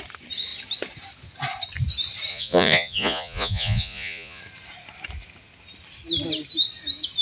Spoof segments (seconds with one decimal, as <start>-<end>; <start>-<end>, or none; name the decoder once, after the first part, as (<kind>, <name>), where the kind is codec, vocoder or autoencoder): 2.3-4.4 (vocoder, Vocos)